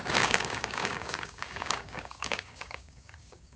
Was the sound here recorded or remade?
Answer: remade